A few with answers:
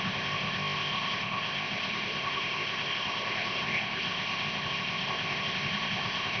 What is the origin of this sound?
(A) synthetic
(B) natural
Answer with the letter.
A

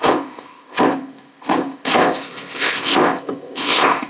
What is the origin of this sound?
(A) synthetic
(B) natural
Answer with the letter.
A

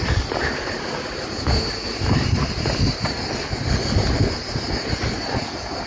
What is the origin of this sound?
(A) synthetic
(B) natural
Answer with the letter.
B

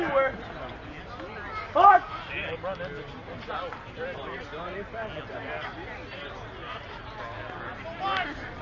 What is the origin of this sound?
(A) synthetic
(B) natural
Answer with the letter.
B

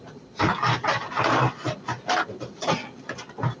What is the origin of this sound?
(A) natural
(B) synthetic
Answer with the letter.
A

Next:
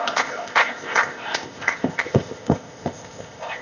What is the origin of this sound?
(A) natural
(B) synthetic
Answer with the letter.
B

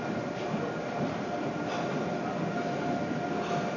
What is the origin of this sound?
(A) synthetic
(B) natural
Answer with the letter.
B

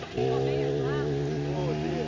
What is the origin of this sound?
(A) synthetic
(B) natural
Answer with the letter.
B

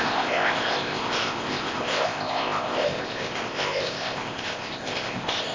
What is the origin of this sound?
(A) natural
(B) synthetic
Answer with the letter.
B